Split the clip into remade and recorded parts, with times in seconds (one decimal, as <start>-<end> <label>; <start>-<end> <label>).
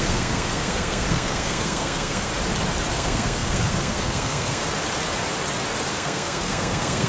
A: 0.0-2.3 remade; 2.3-2.9 recorded; 2.9-4.6 remade; 4.6-5.9 recorded; 5.9-7.1 remade